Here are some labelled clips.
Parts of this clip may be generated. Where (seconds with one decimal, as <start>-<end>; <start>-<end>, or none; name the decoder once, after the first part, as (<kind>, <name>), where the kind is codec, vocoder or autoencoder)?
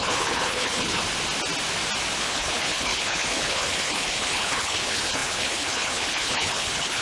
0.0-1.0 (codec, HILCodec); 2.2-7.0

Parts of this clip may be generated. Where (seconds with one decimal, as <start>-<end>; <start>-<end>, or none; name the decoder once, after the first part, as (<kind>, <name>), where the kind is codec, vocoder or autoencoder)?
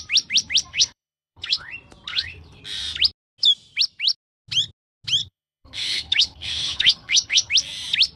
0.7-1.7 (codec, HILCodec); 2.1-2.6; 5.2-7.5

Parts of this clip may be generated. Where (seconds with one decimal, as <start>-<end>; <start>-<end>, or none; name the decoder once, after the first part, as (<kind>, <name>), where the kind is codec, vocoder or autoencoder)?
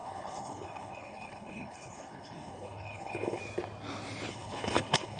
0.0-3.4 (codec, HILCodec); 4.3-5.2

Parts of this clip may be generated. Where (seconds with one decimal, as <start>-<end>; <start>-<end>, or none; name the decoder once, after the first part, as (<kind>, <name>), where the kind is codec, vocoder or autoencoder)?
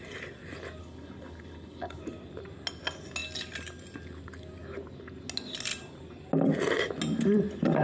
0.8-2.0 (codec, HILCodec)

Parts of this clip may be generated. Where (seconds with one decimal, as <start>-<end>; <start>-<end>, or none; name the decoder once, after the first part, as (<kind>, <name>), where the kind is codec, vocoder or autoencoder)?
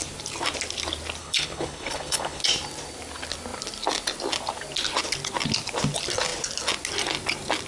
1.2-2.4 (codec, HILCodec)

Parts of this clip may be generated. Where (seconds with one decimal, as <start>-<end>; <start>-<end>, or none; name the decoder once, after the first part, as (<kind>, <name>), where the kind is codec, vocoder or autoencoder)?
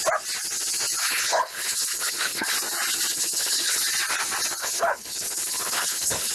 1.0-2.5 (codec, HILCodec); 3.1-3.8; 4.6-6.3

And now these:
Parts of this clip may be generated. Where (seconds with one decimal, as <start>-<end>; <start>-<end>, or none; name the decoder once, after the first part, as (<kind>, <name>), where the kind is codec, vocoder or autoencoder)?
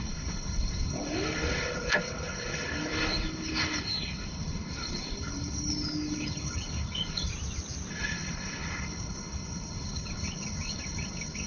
0.0-7.3 (codec, HILCodec); 7.9-11.5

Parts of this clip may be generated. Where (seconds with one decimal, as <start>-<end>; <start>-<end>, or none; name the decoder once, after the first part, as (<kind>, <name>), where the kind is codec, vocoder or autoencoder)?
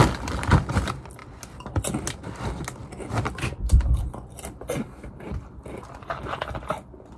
none